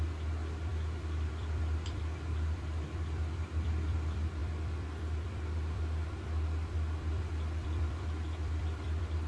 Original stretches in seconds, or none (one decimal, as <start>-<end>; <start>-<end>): none

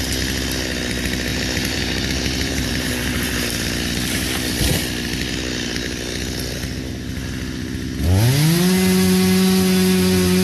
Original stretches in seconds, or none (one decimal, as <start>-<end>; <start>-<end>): 0.0-1.3; 3.3-10.4

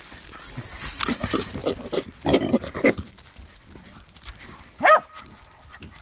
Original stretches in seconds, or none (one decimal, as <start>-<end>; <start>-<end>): 0.0-6.0